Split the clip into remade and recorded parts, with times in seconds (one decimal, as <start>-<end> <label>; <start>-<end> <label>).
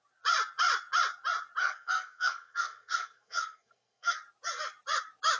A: 0.0-1.6 recorded; 1.6-4.2 remade; 4.2-5.4 recorded